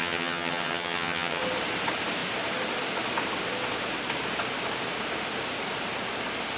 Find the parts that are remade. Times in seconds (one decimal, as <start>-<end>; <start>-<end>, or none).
0.0-1.4